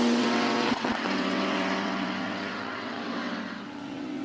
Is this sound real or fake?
fake